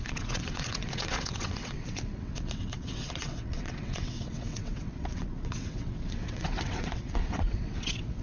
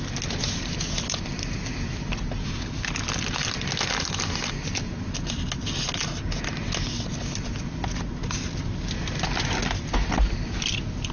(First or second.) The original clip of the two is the second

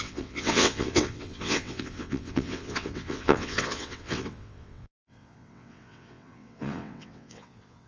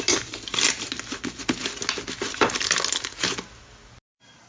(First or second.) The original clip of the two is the second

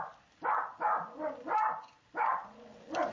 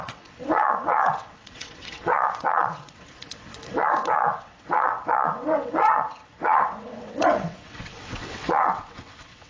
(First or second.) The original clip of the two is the first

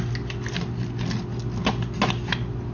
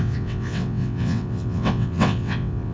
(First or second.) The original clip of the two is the first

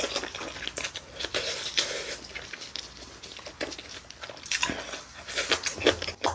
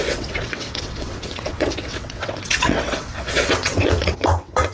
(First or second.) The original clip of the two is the first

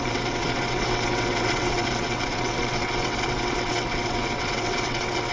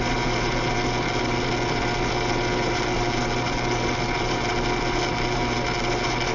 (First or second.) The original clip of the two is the second